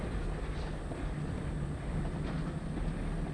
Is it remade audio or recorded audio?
recorded